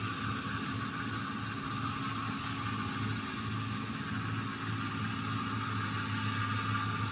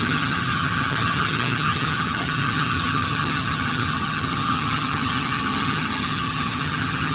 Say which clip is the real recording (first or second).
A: first